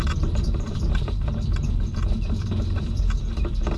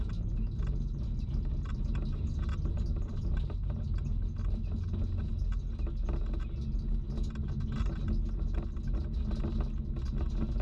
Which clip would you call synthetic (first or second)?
first